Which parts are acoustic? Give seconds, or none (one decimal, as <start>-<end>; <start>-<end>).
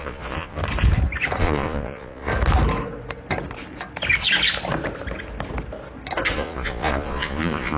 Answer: 0.6-1.4; 2.3-6.3